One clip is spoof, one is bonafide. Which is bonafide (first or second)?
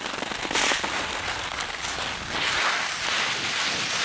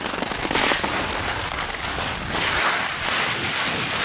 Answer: first